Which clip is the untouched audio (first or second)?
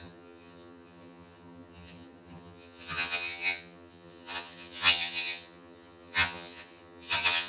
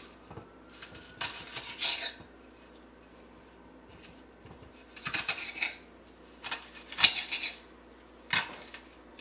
second